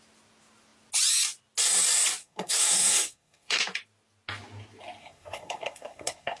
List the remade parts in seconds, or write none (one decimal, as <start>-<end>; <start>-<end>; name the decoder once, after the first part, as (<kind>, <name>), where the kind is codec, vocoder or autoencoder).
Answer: 2.2-3.6 (codec, SNAC); 5.0-6.4